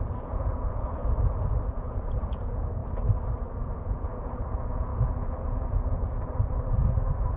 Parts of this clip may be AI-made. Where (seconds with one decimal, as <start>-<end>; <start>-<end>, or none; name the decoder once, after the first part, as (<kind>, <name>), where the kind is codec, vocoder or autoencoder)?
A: 0.0-1.0 (vocoder, Vocos); 1.6-2.8; 3.7-7.4